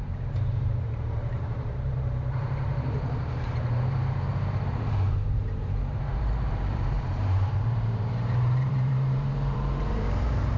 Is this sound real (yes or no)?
no